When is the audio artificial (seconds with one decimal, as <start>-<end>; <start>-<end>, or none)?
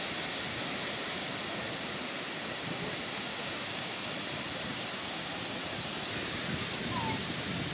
3.3-4.0